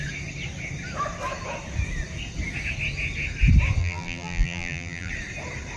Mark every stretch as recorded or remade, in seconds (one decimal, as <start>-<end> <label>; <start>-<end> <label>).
0.0-3.8 recorded; 3.8-5.1 remade; 5.1-5.8 recorded